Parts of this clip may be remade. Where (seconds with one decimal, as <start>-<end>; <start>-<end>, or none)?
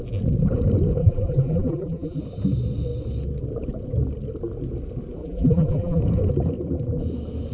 1.0-2.2; 5.2-6.0